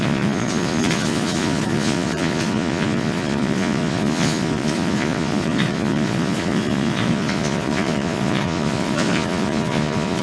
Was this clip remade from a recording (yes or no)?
yes